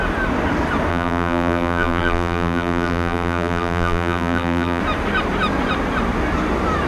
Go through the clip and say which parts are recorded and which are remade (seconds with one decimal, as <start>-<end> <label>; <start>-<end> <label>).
0.0-0.9 recorded; 0.9-4.8 remade; 4.8-6.9 recorded